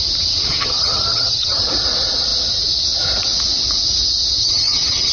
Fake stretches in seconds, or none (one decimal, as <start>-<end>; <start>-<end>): 0.5-1.7; 4.4-5.1